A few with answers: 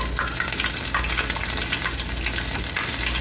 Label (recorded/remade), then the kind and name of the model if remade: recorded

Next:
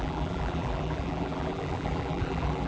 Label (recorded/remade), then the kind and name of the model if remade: remade, vocoder, BigVGAN v2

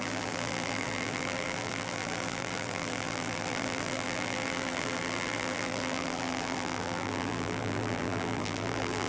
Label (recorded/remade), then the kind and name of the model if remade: remade, vocoder, BigVGAN v2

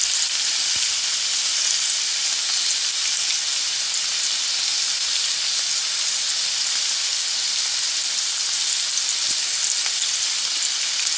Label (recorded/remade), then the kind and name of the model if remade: recorded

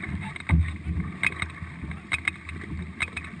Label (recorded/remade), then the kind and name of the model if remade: recorded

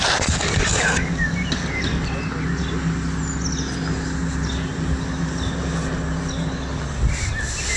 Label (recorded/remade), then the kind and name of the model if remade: recorded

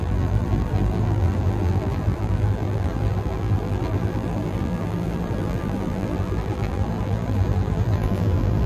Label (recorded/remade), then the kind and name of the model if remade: remade, vocoder, BigVGAN v2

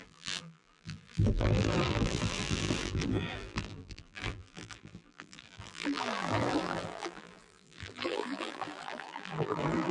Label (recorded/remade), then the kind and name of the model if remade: remade, vocoder, BigVGAN v2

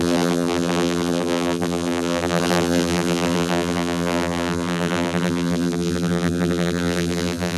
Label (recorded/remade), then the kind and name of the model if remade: remade, vocoder, BigVGAN v2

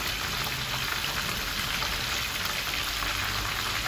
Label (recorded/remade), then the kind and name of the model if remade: recorded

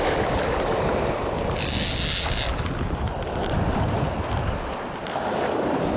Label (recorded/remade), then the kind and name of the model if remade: recorded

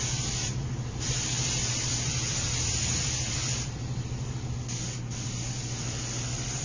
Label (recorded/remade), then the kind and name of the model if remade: remade, vocoder, BigVGAN v2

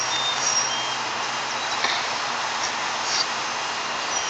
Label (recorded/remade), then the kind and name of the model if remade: recorded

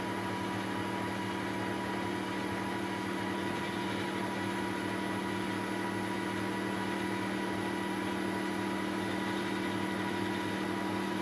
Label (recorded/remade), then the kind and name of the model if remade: recorded